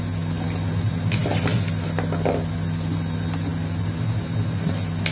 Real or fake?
real